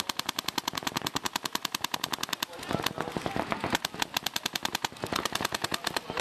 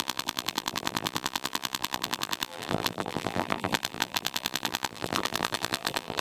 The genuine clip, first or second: first